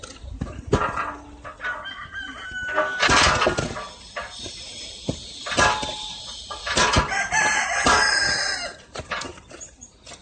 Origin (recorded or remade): recorded